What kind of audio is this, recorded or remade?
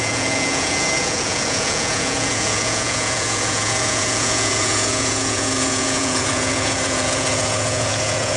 remade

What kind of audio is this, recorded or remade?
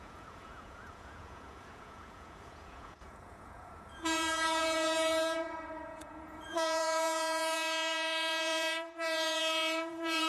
remade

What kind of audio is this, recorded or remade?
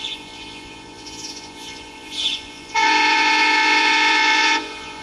remade